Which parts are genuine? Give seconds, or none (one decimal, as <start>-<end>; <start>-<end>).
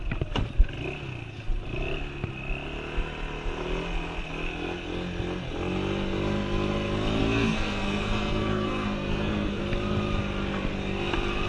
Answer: 0.0-7.2; 9.6-11.5